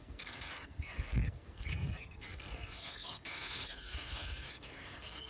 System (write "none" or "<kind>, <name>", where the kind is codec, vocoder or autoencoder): codec, SNAC